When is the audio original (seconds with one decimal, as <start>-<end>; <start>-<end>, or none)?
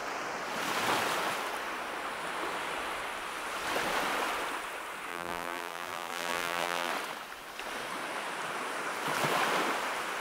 0.0-5.1; 6.9-10.2